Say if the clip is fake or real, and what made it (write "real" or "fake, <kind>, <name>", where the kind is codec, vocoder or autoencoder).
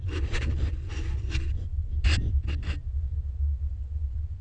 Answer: real